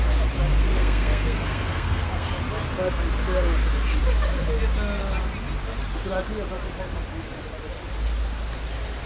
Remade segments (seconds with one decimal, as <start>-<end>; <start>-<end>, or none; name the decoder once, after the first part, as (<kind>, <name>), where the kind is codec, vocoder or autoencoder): 0.6-2.3 (codec, SNAC)